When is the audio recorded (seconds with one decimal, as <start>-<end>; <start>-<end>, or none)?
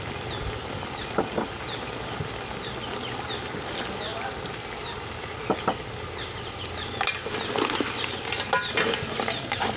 0.0-9.8